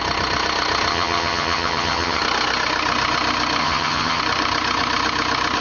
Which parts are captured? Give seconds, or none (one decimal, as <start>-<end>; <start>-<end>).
0.0-0.9; 2.2-3.6; 4.2-5.6